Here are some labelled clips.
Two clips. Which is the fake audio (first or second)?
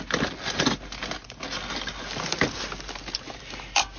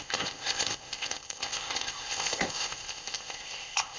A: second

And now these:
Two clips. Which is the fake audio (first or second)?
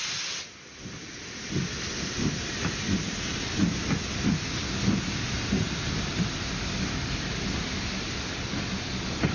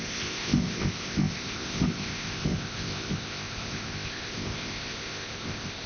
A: second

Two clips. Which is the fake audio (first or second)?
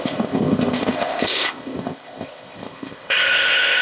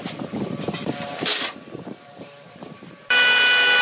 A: first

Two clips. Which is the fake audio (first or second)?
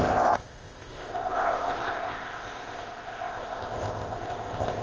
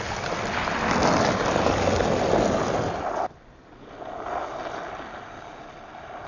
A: first